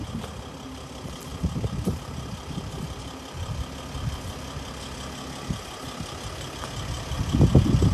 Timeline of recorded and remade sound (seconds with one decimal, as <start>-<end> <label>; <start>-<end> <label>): 0.0-1.3 recorded; 1.3-3.8 remade; 3.8-7.9 recorded